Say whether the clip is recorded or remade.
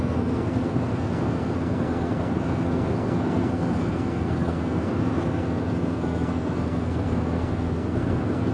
remade